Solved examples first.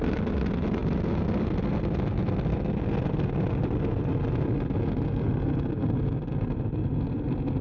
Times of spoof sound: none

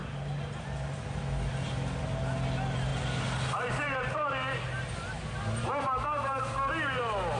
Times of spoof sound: none